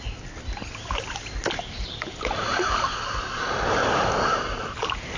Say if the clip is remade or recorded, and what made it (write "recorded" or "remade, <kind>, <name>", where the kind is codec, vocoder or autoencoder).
recorded